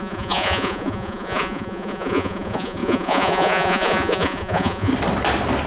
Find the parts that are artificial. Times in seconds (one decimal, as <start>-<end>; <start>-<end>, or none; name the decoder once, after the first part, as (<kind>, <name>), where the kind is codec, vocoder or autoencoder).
0.0-4.9 (vocoder, Vocos)